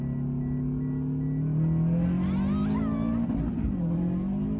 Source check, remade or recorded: recorded